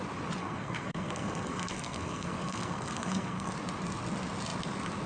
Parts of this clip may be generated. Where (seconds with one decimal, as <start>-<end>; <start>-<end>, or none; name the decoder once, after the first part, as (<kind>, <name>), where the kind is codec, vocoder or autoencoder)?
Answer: 0.4-3.5 (codec, SNAC)